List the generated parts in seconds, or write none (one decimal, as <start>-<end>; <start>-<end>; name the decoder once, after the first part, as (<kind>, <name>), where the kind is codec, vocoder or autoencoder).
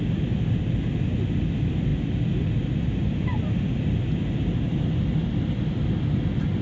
none